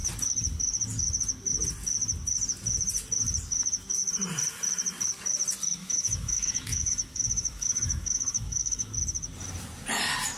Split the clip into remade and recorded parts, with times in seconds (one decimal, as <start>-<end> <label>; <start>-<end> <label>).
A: 0.0-5.8 recorded; 5.8-8.9 remade; 8.9-10.4 recorded